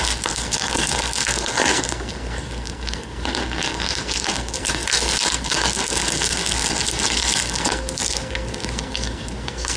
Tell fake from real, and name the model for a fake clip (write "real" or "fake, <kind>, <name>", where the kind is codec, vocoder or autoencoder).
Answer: fake, codec, SNAC